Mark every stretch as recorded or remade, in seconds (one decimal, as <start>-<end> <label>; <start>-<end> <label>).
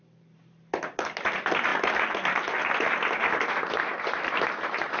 0.0-1.7 remade; 1.7-4.2 recorded; 4.2-5.0 remade